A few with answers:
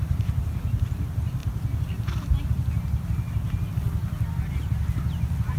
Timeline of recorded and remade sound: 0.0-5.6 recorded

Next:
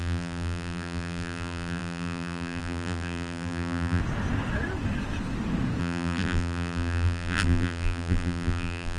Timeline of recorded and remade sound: 0.0-4.0 remade; 4.0-5.8 recorded; 5.8-9.0 remade

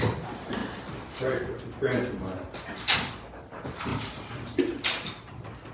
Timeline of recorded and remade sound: 0.0-0.6 recorded; 0.6-1.6 remade; 1.6-3.9 recorded; 3.9-4.6 remade; 4.6-5.7 recorded

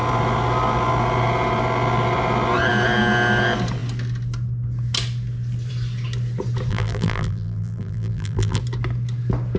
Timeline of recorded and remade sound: 0.0-6.7 recorded; 6.7-8.6 remade; 8.6-9.6 recorded

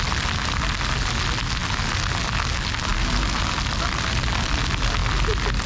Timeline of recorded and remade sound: 0.0-5.0 recorded; 5.0-5.7 remade